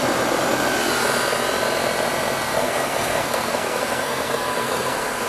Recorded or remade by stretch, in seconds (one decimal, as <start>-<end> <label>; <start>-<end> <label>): 0.0-2.5 recorded; 2.5-5.3 remade